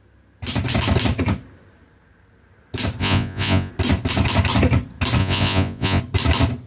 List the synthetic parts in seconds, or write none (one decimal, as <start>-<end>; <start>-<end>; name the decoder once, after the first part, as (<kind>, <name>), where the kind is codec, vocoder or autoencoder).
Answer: 3.0-3.7 (vocoder, Vocos); 5.2-6.0